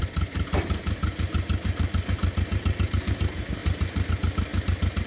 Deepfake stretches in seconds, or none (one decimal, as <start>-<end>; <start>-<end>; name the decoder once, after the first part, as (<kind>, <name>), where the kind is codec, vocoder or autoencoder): none